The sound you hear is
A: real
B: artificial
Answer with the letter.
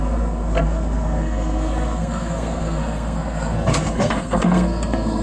B